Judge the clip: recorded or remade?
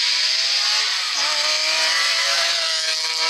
recorded